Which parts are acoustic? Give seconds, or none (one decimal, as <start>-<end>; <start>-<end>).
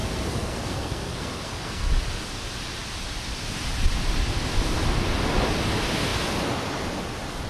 1.9-7.5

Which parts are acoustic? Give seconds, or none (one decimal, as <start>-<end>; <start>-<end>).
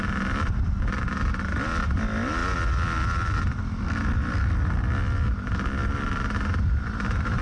0.0-7.4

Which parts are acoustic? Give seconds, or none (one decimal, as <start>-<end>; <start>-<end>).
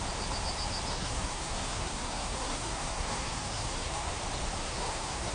0.0-0.9; 4.1-4.6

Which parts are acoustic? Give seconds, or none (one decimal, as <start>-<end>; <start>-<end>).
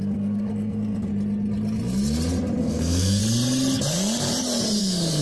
1.1-2.6; 3.2-4.8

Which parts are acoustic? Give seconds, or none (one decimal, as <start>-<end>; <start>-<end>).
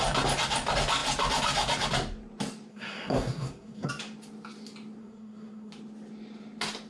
0.0-2.7; 3.9-5.0; 5.7-6.9